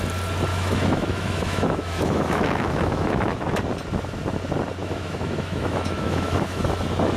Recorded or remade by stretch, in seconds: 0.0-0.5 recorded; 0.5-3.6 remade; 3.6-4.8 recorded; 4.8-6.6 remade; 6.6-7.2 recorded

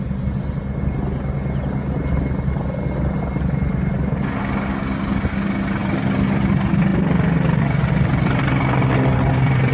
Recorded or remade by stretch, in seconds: 0.0-9.7 recorded

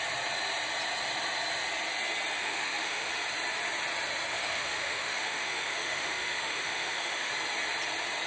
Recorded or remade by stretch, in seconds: 0.0-2.4 recorded; 2.4-3.1 remade; 3.1-4.3 recorded; 4.3-7.3 remade; 7.3-8.3 recorded

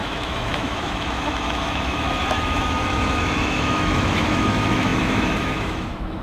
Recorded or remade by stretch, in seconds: 0.0-6.2 remade